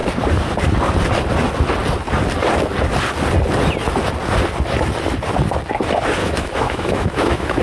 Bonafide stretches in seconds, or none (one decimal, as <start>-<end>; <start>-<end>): 0.0-6.2